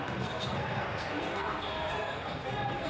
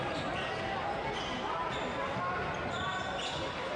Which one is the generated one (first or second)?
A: first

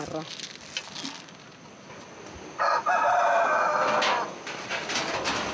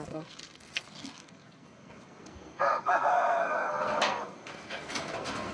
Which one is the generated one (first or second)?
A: second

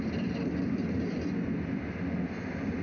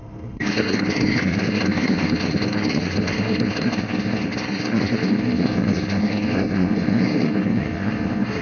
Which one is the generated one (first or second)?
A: second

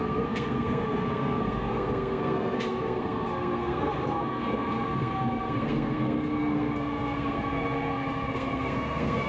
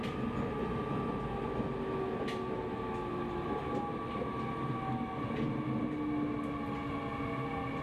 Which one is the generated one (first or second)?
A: first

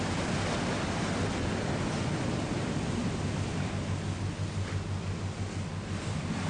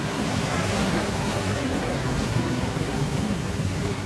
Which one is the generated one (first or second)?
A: second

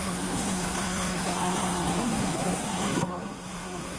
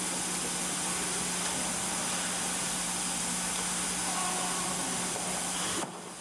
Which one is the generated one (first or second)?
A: first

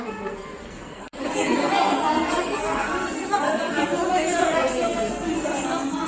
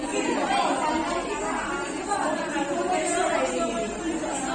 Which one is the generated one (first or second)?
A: first